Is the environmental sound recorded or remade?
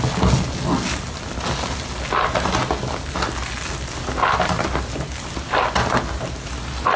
recorded